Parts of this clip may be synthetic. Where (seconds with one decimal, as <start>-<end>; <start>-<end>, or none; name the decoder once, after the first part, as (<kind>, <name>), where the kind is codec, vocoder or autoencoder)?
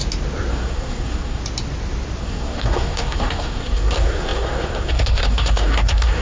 0.5-1.4 (codec, SNAC); 2.2-6.2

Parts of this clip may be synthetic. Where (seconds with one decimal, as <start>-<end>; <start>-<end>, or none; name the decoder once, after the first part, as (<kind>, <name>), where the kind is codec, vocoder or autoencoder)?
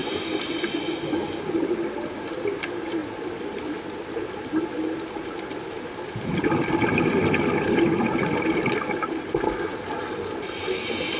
none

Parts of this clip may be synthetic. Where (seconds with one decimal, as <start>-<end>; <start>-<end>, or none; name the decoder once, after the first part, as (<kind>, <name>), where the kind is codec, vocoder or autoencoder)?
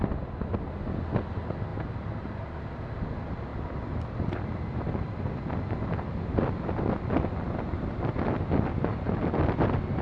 3.5-8.1 (vocoder, BigVGAN v2)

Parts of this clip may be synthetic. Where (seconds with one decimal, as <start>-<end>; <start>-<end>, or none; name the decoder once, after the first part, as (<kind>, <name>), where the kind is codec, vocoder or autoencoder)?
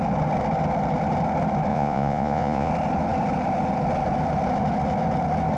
1.7-2.7 (vocoder, Vocos)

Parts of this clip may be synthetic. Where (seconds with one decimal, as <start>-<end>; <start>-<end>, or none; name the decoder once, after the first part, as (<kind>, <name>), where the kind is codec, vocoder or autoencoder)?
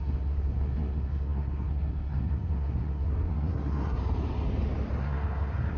0.0-4.0 (codec, SNAC); 5.0-5.8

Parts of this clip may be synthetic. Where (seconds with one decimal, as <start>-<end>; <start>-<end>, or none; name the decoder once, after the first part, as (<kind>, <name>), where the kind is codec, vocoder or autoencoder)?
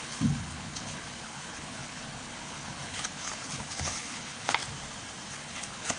0.0-4.6 (codec, HILCodec); 5.3-6.0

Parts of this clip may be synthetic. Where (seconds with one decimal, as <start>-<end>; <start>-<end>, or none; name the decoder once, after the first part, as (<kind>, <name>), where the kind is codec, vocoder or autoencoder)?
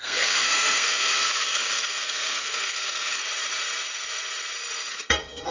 0.0-3.2 (codec, SNAC); 4.9-5.5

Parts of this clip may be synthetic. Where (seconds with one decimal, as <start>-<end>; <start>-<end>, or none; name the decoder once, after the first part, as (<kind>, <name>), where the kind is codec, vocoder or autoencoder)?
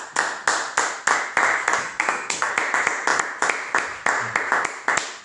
1.8-2.5 (codec, SNAC)